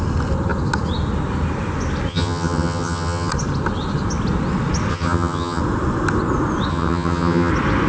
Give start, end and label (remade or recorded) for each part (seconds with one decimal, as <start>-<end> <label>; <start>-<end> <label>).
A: 0.0-2.1 recorded; 2.1-3.3 remade; 3.3-4.9 recorded; 4.9-5.6 remade; 5.6-6.7 recorded; 6.7-7.5 remade; 7.5-7.9 recorded